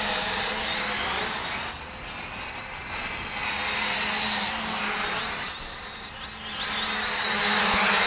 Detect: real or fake real